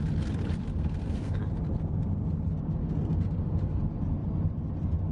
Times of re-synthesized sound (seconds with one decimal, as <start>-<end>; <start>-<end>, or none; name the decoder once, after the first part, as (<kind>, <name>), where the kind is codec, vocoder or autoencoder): 0.7-1.4 (codec, SNAC); 2.8-3.8